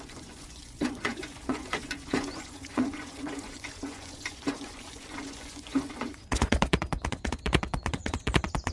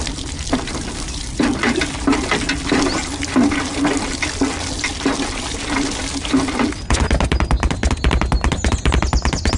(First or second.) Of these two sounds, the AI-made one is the first